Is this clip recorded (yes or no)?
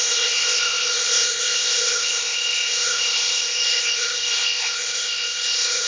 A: no